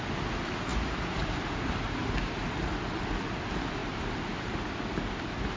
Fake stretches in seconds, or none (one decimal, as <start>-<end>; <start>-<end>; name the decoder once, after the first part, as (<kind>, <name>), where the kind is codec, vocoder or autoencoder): 0.7-1.7 (vocoder, BigVGAN v2); 3.8-4.7